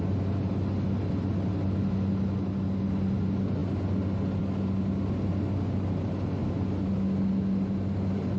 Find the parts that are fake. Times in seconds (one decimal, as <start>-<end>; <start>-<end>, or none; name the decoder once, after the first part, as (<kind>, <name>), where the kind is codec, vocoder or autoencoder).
none